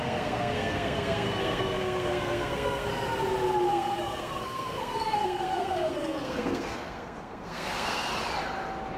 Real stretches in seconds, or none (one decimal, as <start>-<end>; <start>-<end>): 2.9-3.7; 8.1-9.0